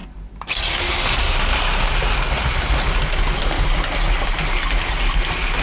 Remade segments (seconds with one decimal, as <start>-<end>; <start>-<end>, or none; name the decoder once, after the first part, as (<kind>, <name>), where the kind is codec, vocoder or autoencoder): none